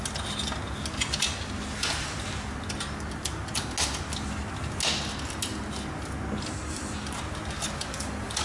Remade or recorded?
recorded